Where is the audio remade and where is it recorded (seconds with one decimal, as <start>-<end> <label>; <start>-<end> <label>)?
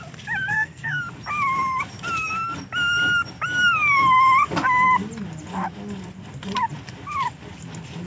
0.0-0.5 recorded; 0.5-1.0 remade; 1.0-8.1 recorded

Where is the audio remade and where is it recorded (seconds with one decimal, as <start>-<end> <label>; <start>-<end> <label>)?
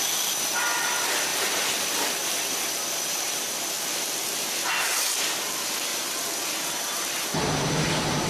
0.0-5.9 recorded; 5.9-7.9 remade; 7.9-8.3 recorded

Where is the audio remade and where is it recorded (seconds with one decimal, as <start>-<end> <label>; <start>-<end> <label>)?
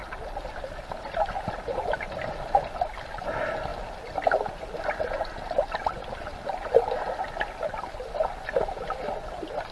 0.0-9.7 recorded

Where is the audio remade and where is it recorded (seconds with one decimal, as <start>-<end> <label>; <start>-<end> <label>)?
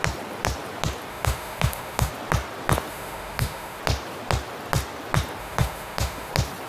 0.0-1.1 recorded; 1.1-2.1 remade; 2.1-2.9 recorded; 2.9-3.8 remade; 3.8-5.4 recorded; 5.4-6.3 remade; 6.3-6.7 recorded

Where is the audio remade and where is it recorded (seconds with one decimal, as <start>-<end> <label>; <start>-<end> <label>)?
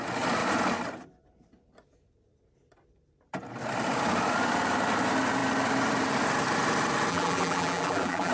0.0-7.1 recorded; 7.1-8.3 remade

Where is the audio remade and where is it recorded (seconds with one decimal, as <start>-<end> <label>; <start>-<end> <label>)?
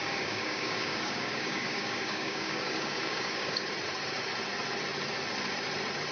0.0-3.7 remade; 3.7-6.1 recorded